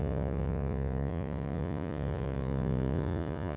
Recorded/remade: remade